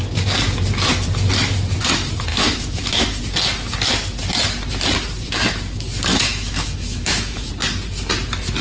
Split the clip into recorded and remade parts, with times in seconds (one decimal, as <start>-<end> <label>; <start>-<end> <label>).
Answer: 0.0-2.3 recorded; 2.3-3.2 remade; 3.2-6.1 recorded; 6.1-7.5 remade; 7.5-8.6 recorded